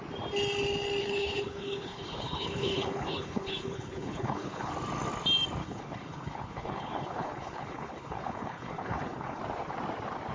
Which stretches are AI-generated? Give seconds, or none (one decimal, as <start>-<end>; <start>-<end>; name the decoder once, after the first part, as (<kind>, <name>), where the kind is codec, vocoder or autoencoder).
1.0-4.7 (codec, HILCodec); 5.6-9.4